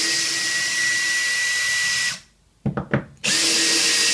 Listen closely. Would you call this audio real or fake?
real